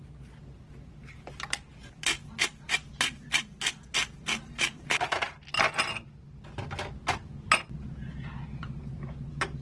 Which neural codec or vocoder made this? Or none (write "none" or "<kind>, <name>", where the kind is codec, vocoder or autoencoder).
none